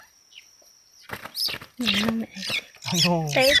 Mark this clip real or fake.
real